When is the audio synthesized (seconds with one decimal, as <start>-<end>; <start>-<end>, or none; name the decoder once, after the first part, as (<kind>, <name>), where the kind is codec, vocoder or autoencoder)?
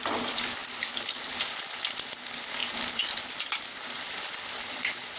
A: 0.6-1.4 (vocoder, BigVGAN v2); 2.6-5.2